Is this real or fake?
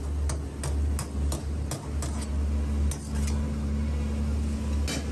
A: real